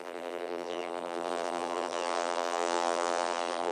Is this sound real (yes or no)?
no